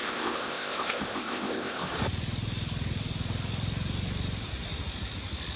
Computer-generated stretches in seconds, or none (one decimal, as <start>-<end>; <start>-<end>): 0.0-1.9